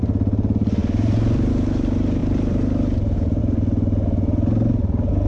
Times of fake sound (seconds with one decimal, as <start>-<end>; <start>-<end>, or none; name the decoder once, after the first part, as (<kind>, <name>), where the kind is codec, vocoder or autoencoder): 0.8-1.5 (vocoder, BigVGAN v2); 2.2-3.4